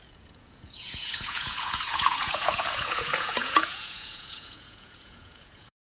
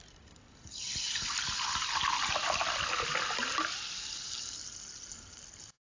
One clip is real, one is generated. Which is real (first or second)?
second